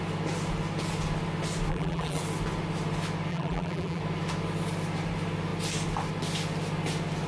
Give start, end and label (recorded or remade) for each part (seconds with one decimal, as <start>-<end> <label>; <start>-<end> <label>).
0.0-1.7 recorded; 1.7-2.2 remade; 2.2-3.3 recorded; 3.3-4.0 remade; 4.0-7.3 recorded